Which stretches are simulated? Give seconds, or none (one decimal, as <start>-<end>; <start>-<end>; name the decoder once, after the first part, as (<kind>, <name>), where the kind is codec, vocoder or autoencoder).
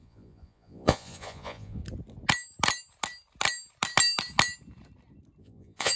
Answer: 0.0-1.8 (vocoder, Vocos); 5.4-6.0